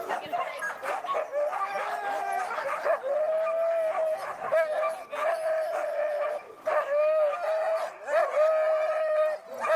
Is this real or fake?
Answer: real